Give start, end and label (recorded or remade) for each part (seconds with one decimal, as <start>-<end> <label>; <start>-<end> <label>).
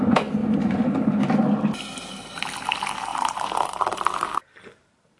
0.0-0.4 recorded; 0.4-1.3 remade; 1.3-3.1 recorded; 3.1-4.3 remade; 4.3-5.2 recorded